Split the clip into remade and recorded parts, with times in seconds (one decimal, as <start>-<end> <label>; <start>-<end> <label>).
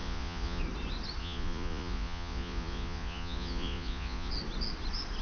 0.0-0.6 remade; 0.6-1.2 recorded; 1.2-4.3 remade; 4.3-5.2 recorded